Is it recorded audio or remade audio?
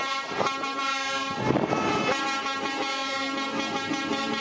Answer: recorded